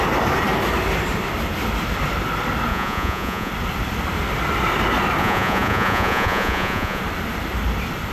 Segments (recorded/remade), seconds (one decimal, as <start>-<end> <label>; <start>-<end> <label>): 0.0-2.7 recorded; 2.7-3.5 remade; 3.5-5.2 recorded; 5.2-7.0 remade; 7.0-8.1 recorded